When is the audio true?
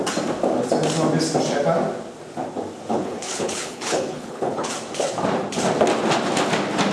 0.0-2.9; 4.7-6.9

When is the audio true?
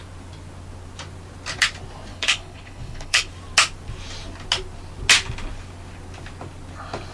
0.0-2.1; 3.3-7.1